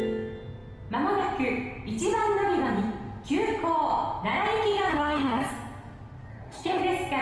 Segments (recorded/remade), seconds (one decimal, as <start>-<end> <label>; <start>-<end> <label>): 0.0-4.9 recorded; 4.9-5.5 remade; 5.5-6.3 recorded; 6.3-6.8 remade; 6.8-7.2 recorded